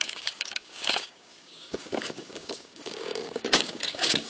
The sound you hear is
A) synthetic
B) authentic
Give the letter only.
A